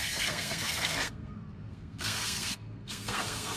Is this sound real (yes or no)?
no